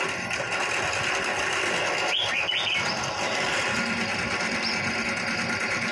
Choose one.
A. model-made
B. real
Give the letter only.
B